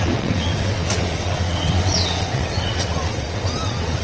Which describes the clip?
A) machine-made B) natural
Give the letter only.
A